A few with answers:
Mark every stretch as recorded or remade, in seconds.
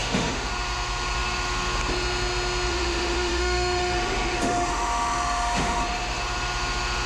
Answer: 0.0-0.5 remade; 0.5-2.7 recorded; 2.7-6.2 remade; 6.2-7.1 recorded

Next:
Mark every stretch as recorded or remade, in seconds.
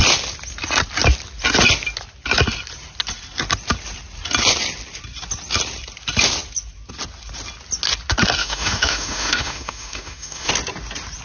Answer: 0.0-8.4 recorded; 8.4-10.5 remade; 10.5-11.2 recorded